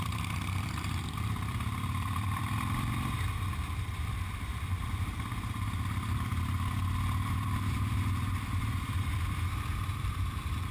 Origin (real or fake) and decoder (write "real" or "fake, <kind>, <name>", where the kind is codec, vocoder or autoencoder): fake, vocoder, BigVGAN v2